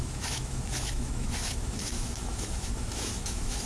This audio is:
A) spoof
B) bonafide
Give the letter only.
A